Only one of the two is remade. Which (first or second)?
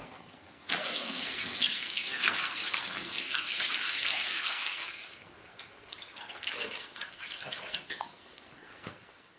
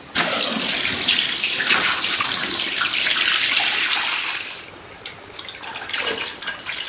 first